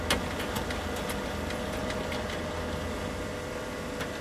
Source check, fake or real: real